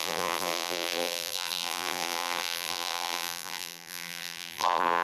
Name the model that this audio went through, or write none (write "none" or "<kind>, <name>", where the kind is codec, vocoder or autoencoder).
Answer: vocoder, BigVGAN v2